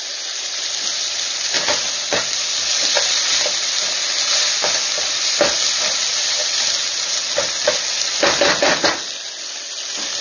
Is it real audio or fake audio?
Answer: real